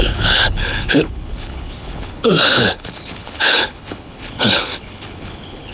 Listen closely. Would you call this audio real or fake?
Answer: fake